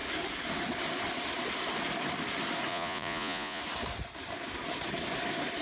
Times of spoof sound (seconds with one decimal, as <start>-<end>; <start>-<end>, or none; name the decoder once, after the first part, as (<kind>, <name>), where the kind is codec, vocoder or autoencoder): 2.7-3.6 (vocoder, Vocos)